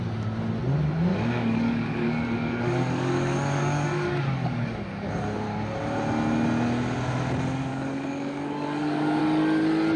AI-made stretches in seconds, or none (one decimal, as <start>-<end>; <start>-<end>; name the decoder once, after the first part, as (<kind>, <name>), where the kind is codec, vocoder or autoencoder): 1.1-5.1 (codec, DAC); 7.7-9.2